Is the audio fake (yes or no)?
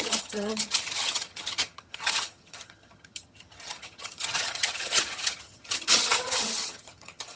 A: yes